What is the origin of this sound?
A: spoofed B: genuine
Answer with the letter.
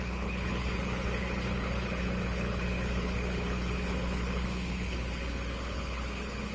A